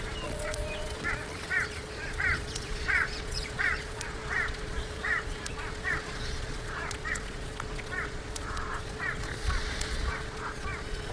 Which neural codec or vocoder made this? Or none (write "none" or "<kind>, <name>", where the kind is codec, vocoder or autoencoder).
vocoder, Vocos